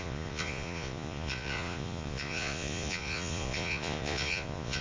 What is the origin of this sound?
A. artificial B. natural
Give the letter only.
A